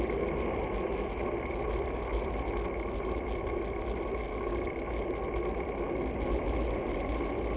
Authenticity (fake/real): real